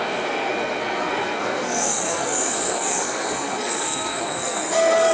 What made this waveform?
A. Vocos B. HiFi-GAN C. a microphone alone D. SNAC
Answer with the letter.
D